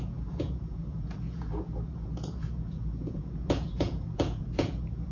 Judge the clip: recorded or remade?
remade